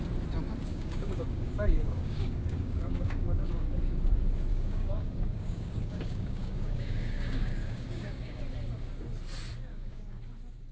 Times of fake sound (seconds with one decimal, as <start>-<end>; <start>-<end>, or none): 0.7-3.8; 4.5-8.4; 9.7-10.2